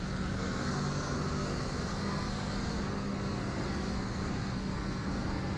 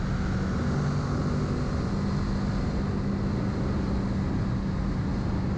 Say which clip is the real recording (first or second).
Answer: second